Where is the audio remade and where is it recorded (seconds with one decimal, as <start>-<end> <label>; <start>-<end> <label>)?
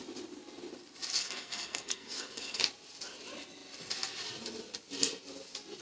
0.0-1.2 recorded; 1.2-2.6 remade; 2.6-5.8 recorded